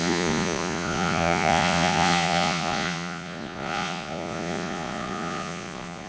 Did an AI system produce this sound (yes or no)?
yes